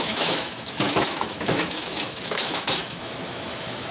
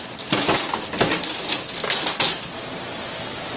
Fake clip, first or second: first